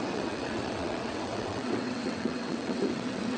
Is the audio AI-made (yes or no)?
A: yes